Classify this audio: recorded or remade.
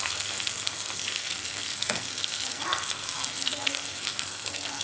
remade